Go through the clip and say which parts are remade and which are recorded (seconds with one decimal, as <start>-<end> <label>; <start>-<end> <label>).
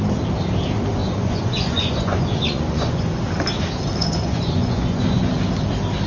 0.0-1.0 recorded; 1.0-3.2 remade; 3.2-4.0 recorded; 4.0-5.3 remade; 5.3-6.1 recorded